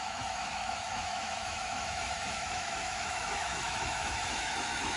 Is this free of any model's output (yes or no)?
no